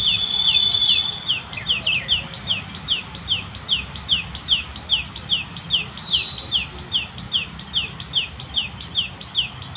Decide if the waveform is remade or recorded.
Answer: recorded